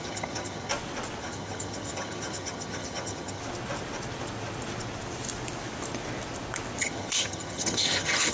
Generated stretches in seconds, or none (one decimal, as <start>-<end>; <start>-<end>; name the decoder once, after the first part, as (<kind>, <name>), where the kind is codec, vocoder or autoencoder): 0.0-0.7 (vocoder, HiFi-GAN); 1.2-3.4; 6.8-8.3